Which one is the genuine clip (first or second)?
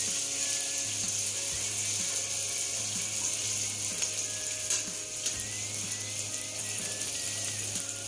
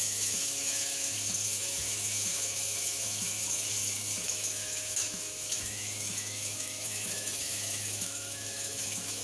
first